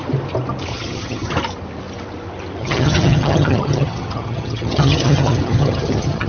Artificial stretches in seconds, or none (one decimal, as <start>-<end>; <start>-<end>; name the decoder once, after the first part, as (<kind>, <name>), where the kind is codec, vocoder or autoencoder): 0.7-1.3 (vocoder, HiFi-GAN); 2.6-6.3